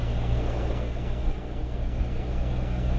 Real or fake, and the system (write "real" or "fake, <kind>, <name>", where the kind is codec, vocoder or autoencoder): fake, codec, SNAC